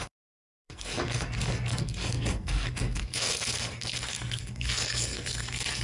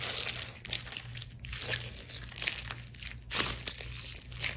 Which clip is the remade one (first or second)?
first